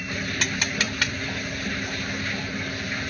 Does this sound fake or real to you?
real